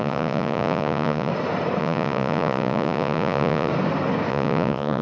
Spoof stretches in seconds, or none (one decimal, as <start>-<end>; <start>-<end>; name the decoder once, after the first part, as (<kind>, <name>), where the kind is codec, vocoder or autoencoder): 0.0-1.3 (vocoder, Vocos); 1.8-3.7; 4.3-5.0